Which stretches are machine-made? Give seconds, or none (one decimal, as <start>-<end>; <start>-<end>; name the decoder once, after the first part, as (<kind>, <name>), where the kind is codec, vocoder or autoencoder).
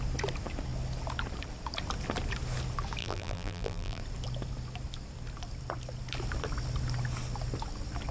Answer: 3.0-4.0 (vocoder, BigVGAN v2)